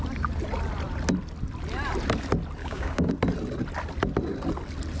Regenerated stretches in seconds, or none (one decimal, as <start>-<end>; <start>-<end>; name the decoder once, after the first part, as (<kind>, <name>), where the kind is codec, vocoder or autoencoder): 2.6-3.1 (codec, DAC)